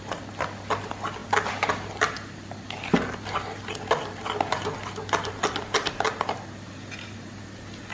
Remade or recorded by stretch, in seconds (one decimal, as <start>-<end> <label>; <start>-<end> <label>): 0.0-7.9 recorded